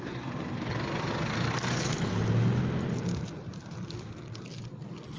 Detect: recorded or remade recorded